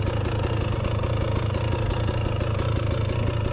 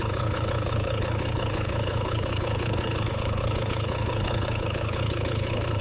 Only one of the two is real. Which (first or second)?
first